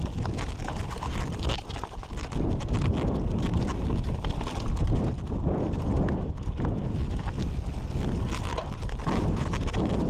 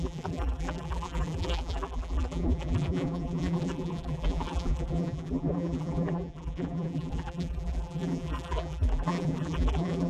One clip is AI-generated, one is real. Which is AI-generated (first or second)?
second